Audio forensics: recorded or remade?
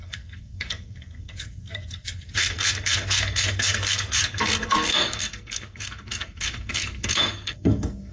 remade